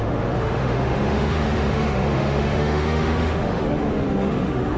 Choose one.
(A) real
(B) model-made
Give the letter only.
B